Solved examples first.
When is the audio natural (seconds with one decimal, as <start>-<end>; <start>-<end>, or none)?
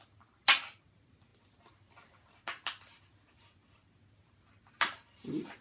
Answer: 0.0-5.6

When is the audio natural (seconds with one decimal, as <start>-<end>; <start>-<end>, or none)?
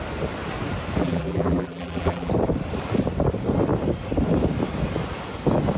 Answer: 0.0-1.0; 2.3-5.8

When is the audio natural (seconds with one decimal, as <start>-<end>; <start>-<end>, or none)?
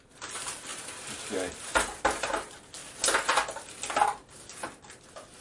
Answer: 2.8-5.0